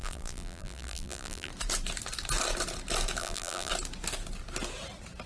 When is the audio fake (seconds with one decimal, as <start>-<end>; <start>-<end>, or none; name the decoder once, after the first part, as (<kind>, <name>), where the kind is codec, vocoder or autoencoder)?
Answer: 0.0-1.5 (vocoder, BigVGAN v2); 3.2-3.7

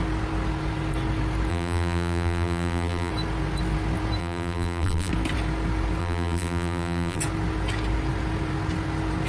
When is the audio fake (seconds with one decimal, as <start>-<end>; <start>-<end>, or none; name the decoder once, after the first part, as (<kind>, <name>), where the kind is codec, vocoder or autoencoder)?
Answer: 1.5-3.1 (vocoder, BigVGAN v2); 4.2-5.1; 6.0-7.2

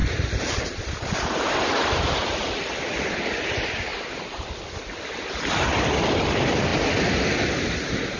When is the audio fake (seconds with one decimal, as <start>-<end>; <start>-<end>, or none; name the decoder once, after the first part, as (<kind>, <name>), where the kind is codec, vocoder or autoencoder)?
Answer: 0.0-2.9 (vocoder, BigVGAN v2); 3.9-4.5